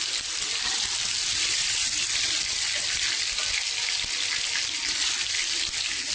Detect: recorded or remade recorded